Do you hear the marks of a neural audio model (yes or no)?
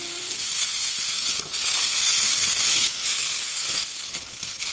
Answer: yes